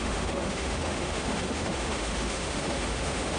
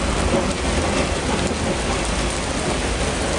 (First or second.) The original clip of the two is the second